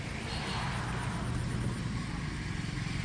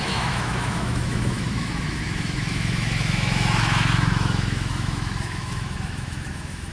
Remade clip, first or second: second